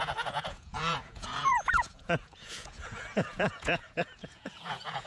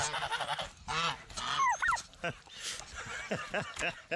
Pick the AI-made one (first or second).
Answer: first